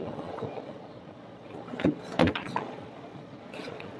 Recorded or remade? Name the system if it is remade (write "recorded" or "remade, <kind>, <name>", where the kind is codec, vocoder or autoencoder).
remade, vocoder, Vocos